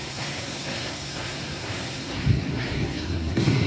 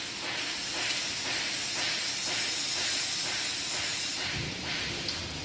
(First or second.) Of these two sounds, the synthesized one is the first